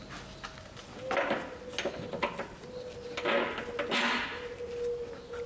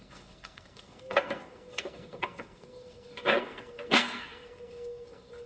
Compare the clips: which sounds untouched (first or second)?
first